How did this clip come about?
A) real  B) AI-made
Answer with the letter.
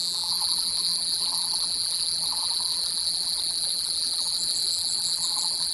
B